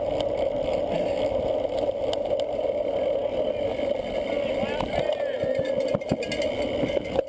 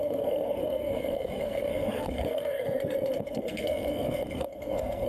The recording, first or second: first